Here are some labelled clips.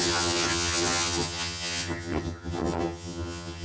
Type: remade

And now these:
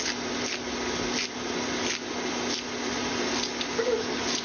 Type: recorded